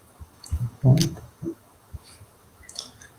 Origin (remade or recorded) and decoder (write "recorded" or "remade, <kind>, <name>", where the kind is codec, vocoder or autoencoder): remade, autoencoder, DAC-VAE